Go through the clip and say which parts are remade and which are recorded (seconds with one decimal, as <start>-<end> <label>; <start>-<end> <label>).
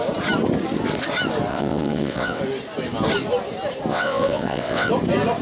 0.0-1.5 recorded; 1.5-2.4 remade; 2.4-3.9 recorded; 3.9-4.9 remade; 4.9-5.4 recorded